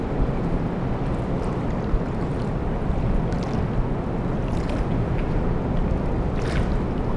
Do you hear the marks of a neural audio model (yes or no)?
no